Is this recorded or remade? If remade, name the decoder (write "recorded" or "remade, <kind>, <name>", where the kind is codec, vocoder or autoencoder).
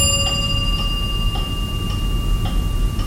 recorded